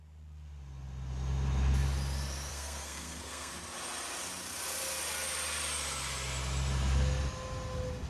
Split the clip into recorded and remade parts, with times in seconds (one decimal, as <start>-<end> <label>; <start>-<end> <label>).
0.0-2.5 recorded; 2.5-3.5 remade; 3.5-8.1 recorded